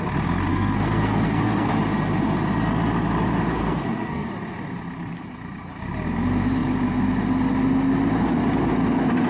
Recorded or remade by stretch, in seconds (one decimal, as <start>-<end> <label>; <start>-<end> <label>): 0.0-0.5 recorded; 0.5-1.7 remade; 1.7-3.5 recorded; 3.5-4.3 remade; 4.3-9.3 recorded